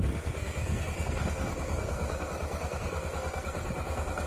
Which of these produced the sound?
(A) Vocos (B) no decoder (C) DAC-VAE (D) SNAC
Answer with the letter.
D